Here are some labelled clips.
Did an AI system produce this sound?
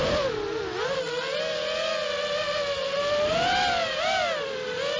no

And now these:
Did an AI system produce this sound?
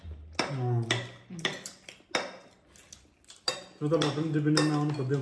no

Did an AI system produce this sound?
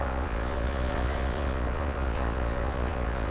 yes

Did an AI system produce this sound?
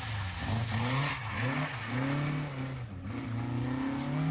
no